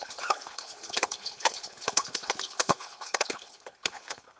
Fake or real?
fake